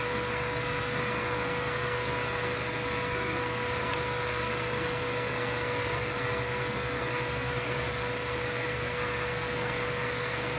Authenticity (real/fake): fake